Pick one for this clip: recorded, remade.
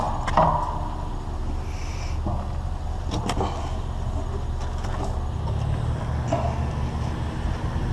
recorded